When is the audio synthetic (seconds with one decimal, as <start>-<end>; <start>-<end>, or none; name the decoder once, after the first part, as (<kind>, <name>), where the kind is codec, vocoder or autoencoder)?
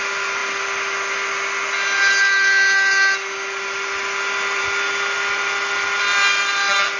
none